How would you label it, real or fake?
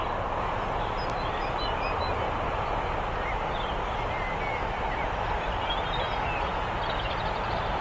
real